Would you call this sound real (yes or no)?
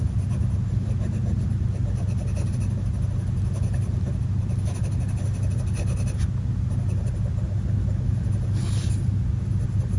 yes